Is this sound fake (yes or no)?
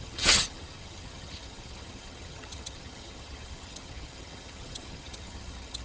yes